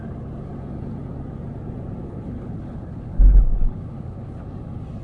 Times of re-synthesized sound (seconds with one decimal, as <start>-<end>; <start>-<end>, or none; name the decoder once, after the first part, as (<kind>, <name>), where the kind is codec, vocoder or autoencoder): 2.0-4.4 (codec, HILCodec)